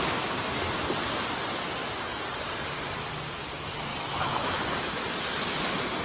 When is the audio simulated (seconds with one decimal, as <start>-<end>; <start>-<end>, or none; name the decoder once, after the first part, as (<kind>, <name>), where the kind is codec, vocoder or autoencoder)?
3.9-5.0 (autoencoder, DAC-VAE)